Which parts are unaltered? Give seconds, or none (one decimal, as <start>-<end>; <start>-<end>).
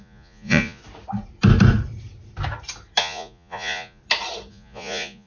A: 0.8-3.0; 4.0-4.5